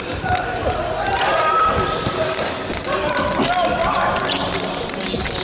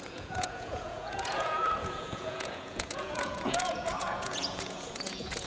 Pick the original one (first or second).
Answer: first